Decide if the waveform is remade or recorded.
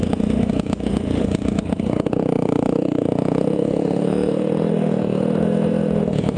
remade